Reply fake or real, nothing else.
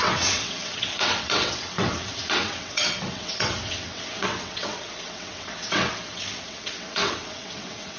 fake